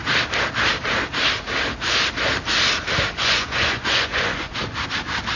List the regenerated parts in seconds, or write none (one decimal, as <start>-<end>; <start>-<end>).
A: 3.2-4.5